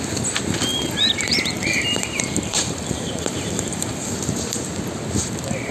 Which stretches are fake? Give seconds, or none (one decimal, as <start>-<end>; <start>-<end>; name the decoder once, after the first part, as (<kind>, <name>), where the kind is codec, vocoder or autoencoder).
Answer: 0.7-4.1 (vocoder, BigVGAN v2)